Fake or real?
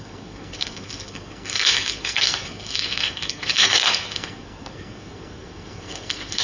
fake